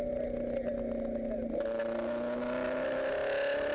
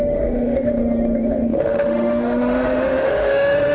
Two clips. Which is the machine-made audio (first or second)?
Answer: second